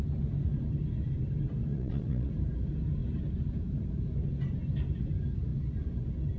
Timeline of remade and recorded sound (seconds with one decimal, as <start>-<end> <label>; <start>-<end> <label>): 0.0-1.7 recorded; 1.7-2.3 remade; 2.3-6.4 recorded